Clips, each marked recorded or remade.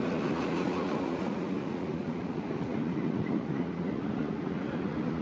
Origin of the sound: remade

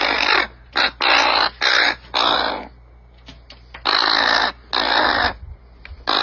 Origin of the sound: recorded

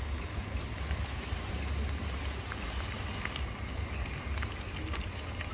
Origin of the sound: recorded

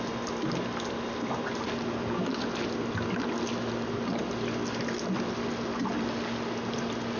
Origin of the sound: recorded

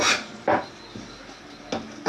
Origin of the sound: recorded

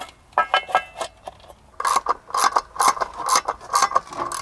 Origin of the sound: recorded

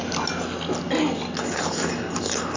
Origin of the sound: recorded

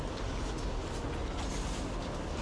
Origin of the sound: recorded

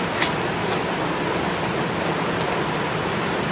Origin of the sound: recorded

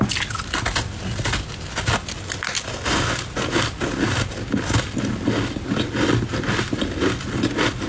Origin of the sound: recorded